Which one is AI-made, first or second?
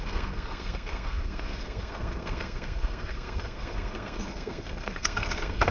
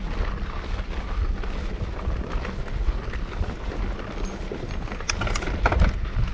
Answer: first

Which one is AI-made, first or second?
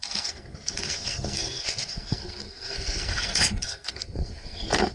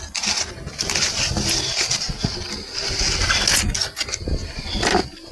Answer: first